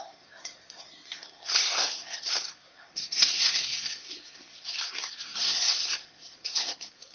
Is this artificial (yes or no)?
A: yes